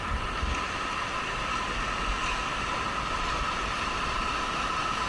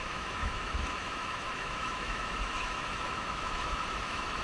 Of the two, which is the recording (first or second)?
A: first